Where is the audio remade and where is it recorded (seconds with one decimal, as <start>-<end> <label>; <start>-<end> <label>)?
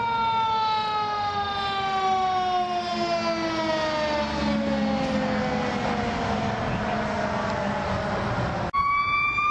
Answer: 0.0-9.5 recorded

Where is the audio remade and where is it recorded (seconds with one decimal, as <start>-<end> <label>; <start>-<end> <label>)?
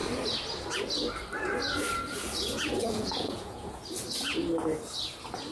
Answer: 0.0-2.8 recorded; 2.8-3.8 remade; 3.8-5.5 recorded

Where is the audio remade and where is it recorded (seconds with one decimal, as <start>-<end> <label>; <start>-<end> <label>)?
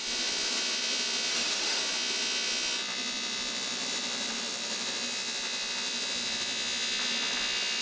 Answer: 0.0-1.3 recorded; 1.3-1.8 remade; 1.8-7.8 recorded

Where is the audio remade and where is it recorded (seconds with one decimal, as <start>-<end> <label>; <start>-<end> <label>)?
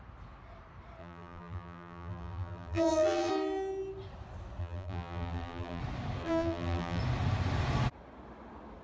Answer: 0.0-1.0 recorded; 1.0-3.3 remade; 3.3-4.6 recorded; 4.6-5.8 remade; 5.8-6.2 recorded; 6.2-7.0 remade; 7.0-8.8 recorded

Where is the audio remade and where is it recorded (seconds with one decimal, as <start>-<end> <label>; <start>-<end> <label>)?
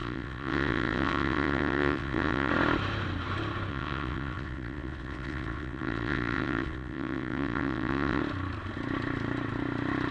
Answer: 0.0-2.5 remade; 2.5-3.7 recorded; 3.7-8.2 remade; 8.2-10.1 recorded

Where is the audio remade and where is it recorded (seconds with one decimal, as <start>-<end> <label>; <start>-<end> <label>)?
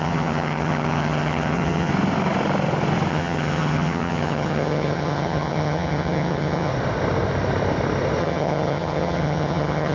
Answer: 0.0-1.9 remade; 1.9-3.1 recorded; 3.1-6.7 remade; 6.7-8.2 recorded; 8.2-9.9 remade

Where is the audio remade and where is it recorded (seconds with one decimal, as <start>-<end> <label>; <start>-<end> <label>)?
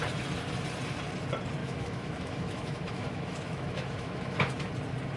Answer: 0.0-1.6 recorded; 1.6-4.7 remade; 4.7-5.2 recorded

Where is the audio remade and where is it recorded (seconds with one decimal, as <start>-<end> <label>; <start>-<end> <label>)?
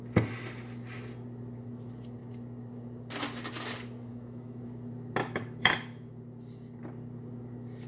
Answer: 0.0-4.1 recorded; 4.1-4.6 remade; 4.6-5.2 recorded; 5.2-6.2 remade; 6.2-7.9 recorded